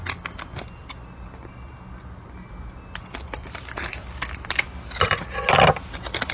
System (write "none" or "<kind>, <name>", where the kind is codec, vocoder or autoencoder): none